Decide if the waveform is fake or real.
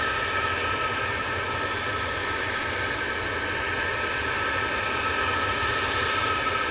real